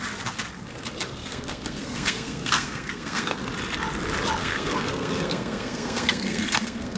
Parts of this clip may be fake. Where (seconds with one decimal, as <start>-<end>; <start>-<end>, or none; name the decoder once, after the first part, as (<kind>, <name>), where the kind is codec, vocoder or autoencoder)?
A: 1.2-3.4 (codec, SNAC); 4.4-7.0